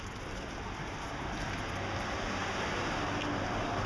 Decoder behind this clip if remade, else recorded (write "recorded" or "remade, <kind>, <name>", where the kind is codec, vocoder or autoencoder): recorded